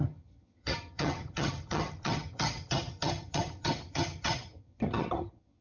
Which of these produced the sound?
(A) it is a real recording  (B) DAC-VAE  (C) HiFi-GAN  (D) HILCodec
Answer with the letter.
C